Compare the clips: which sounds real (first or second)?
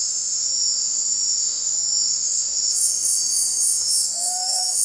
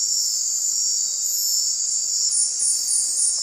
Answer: second